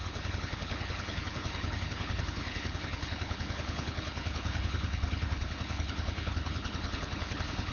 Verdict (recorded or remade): remade